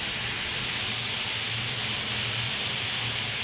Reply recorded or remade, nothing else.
recorded